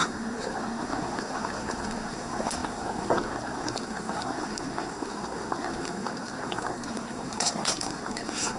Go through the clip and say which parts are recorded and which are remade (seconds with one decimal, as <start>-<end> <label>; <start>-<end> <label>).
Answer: 0.0-8.6 remade